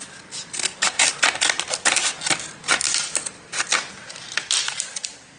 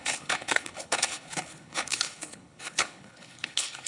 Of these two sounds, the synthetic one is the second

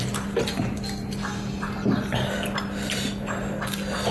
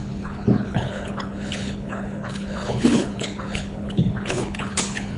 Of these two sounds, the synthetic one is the second